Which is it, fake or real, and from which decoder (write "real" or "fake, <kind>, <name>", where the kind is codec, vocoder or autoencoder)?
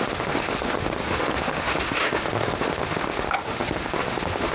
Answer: fake, autoencoder, DAC-VAE